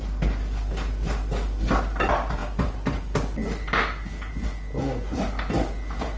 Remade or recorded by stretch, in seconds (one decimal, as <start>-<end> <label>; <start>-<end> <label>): 0.0-6.2 recorded